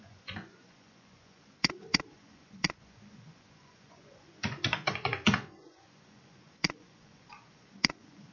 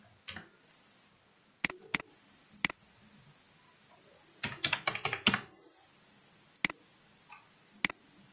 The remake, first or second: first